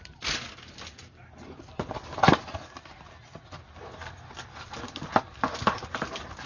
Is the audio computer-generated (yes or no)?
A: yes